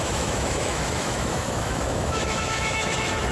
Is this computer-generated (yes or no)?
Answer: yes